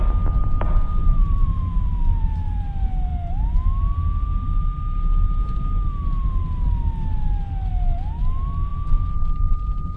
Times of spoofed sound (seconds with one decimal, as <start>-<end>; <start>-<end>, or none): 1.0-2.7